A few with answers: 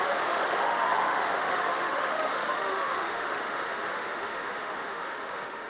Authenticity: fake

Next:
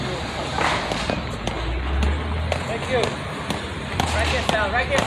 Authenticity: real